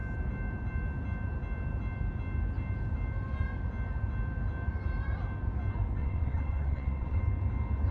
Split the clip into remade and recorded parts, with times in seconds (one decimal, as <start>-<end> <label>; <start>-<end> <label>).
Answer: 0.0-6.0 recorded; 6.0-7.2 remade; 7.2-7.9 recorded

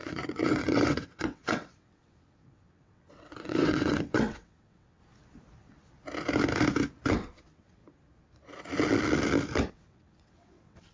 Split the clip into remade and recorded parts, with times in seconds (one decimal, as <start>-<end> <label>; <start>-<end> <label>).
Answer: 0.0-5.0 remade; 5.0-7.1 recorded; 7.1-7.8 remade; 7.8-9.7 recorded; 9.7-10.9 remade

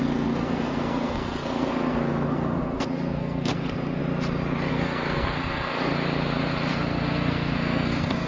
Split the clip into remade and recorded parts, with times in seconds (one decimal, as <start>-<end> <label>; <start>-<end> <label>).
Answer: 0.0-4.0 remade; 4.0-4.7 recorded; 4.7-5.9 remade; 5.9-6.7 recorded; 6.7-8.3 remade

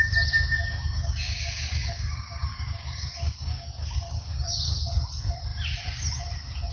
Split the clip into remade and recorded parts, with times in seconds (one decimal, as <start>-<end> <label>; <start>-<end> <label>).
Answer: 0.0-0.8 recorded; 0.8-4.6 remade; 4.6-6.7 recorded

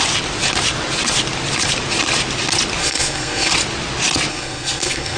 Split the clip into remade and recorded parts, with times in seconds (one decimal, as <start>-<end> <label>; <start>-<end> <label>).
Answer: 0.0-2.8 recorded; 2.8-3.5 remade; 3.5-4.3 recorded; 4.3-5.2 remade

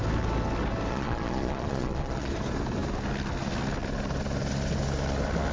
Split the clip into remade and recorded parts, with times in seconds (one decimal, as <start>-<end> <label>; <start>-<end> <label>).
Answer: 0.0-0.9 recorded; 0.9-2.3 remade; 2.3-5.5 recorded

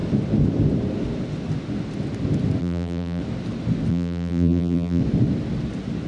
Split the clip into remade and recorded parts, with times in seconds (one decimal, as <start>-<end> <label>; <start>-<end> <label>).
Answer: 0.0-2.6 recorded; 2.6-3.2 remade; 3.2-3.9 recorded; 3.9-5.0 remade; 5.0-6.1 recorded